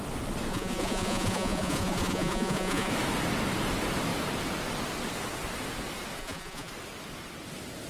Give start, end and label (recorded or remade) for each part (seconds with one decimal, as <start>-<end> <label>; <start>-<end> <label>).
0.0-0.5 recorded; 0.5-2.9 remade; 2.9-6.2 recorded; 6.2-6.7 remade; 6.7-7.9 recorded